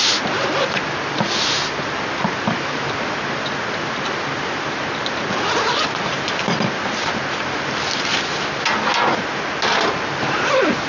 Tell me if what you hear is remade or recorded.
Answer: recorded